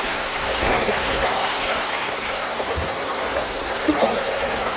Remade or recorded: remade